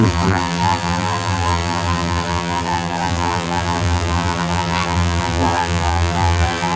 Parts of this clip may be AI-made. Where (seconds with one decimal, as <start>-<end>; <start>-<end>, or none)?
0.0-6.8